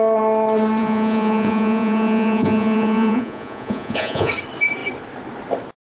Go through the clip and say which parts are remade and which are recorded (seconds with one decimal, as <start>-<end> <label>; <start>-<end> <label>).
0.0-0.8 recorded; 0.8-4.3 remade; 4.3-5.9 recorded